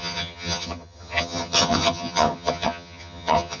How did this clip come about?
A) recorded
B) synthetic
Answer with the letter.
B